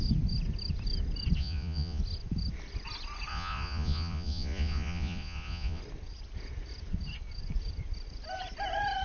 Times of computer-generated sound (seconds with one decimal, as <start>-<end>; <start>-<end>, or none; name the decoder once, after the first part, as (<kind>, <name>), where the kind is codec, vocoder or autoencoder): 1.4-2.0 (vocoder, Vocos); 3.3-5.8